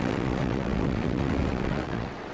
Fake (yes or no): yes